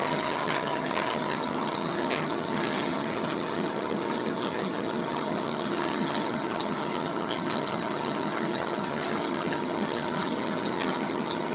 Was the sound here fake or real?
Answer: fake